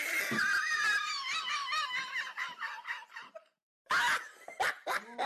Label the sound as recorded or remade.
recorded